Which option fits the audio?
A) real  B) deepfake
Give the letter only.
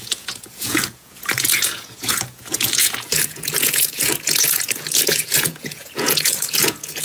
B